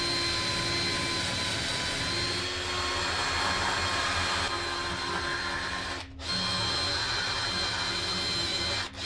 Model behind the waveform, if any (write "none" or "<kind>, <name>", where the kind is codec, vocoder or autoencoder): none